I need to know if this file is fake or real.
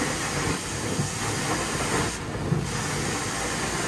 real